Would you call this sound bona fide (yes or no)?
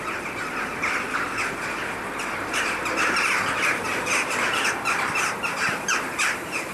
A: no